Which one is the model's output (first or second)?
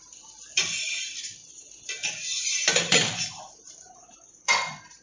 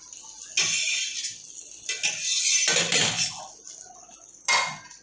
first